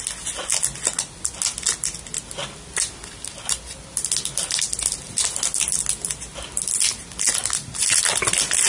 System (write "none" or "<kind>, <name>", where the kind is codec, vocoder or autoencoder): none